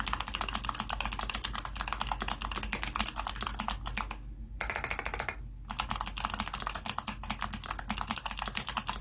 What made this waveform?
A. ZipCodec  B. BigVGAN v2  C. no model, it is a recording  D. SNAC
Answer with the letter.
C